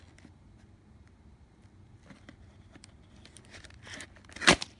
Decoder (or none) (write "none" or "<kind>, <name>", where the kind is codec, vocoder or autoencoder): none